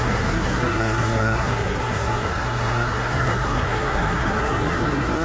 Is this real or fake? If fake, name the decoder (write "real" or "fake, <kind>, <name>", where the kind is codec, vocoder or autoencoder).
fake, codec, SNAC